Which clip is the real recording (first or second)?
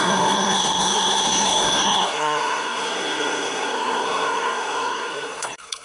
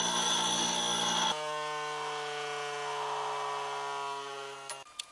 second